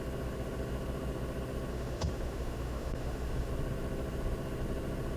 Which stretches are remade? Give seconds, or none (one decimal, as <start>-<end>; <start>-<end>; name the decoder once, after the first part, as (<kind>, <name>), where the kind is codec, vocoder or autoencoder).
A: 1.7-3.5 (autoencoder, DAC-VAE)